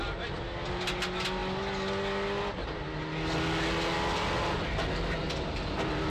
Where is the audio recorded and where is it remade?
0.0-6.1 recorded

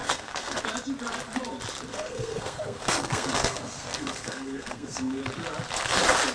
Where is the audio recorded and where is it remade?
0.0-0.6 remade; 0.6-1.9 recorded; 1.9-5.2 remade; 5.2-6.3 recorded

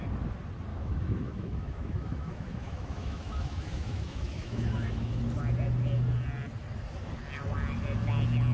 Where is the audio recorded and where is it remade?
0.0-0.7 recorded; 0.7-5.2 remade; 5.2-8.5 recorded